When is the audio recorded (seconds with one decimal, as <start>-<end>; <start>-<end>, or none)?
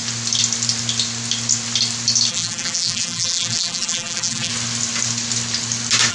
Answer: 0.0-2.3; 4.5-6.1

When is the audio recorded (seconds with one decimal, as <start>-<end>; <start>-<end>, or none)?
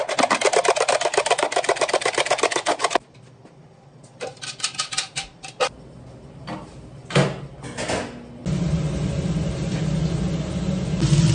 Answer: 0.0-11.3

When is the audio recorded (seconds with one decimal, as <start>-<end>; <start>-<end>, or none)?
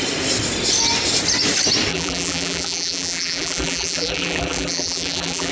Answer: 0.0-1.9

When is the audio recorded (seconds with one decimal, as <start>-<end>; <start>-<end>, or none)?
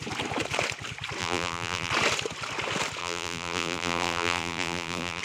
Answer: 0.0-1.2; 1.9-3.0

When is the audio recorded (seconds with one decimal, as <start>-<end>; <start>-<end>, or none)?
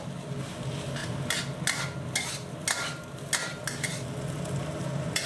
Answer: 0.0-5.3